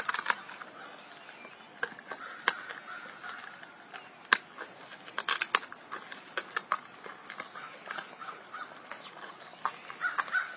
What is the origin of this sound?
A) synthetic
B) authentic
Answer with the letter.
B